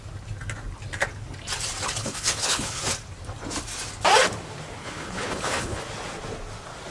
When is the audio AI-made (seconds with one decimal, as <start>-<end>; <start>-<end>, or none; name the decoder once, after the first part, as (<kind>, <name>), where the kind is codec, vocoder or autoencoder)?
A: 2.0-2.8 (codec, HILCodec); 4.8-5.8